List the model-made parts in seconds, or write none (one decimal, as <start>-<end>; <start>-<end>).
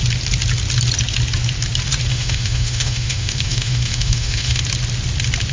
2.1-4.6